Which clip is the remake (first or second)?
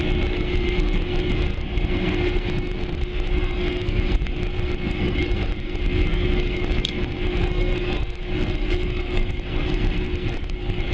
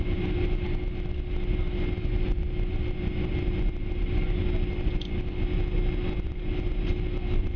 first